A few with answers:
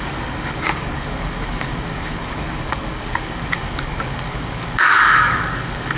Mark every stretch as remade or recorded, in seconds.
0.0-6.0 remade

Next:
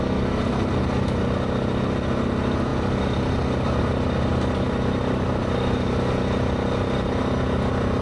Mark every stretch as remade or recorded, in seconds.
0.0-8.0 recorded

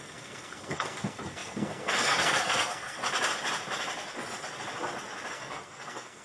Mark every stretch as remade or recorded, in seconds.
0.0-3.0 remade; 3.0-5.3 recorded; 5.3-6.2 remade

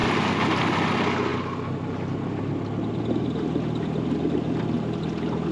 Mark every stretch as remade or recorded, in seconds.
0.0-5.5 recorded

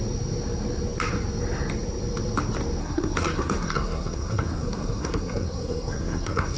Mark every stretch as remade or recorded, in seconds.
0.0-2.8 recorded; 2.8-6.6 remade

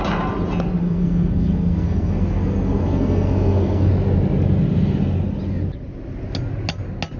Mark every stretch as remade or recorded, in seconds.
0.0-0.8 recorded; 0.8-3.9 remade; 3.9-7.2 recorded

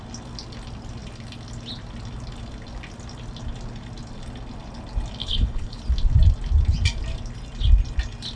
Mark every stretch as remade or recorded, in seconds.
0.0-5.2 recorded; 5.2-5.8 remade; 5.8-8.4 recorded